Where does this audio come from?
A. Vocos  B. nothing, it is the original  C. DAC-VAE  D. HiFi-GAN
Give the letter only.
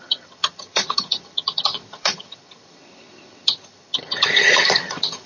D